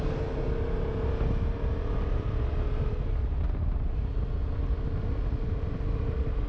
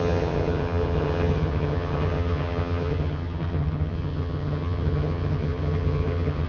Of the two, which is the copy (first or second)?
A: second